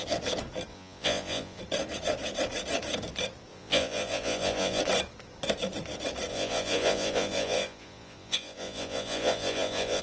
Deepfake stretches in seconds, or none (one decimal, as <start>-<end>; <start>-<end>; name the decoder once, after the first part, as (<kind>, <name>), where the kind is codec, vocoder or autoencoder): 0.7-1.6 (vocoder, Vocos); 3.5-4.8; 6.3-10.0